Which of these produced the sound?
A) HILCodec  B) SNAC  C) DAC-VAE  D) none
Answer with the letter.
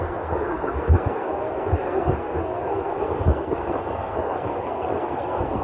B